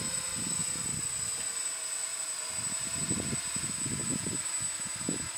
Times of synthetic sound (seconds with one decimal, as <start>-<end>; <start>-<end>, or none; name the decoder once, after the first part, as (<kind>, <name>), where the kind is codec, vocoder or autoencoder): none